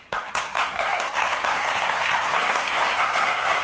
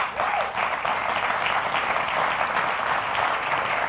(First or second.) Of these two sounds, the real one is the second